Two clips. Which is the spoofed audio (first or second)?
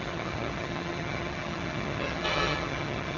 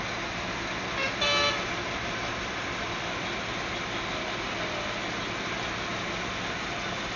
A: first